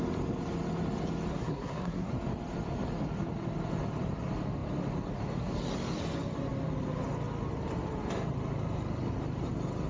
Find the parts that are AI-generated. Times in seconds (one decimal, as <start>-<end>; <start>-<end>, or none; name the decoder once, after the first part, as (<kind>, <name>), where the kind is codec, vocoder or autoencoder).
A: 1.3-2.1 (codec, SNAC)